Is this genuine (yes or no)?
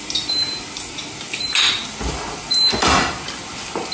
yes